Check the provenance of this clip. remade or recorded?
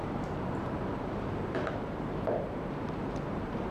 remade